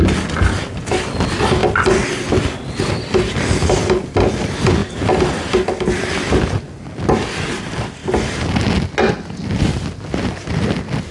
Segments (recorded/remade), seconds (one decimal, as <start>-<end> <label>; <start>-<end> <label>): 0.0-11.1 recorded